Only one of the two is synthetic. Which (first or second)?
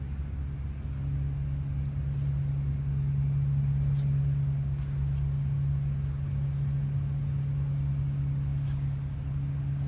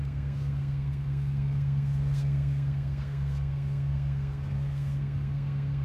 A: second